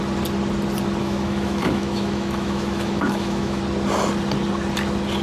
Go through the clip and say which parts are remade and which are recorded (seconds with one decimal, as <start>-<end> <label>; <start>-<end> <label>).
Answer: 0.0-1.0 recorded; 1.0-3.6 remade; 3.6-5.2 recorded